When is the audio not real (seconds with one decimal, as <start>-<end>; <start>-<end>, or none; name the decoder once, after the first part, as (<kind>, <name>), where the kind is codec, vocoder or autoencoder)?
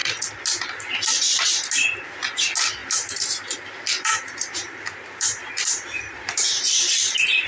2.8-7.5 (vocoder, BigVGAN v2)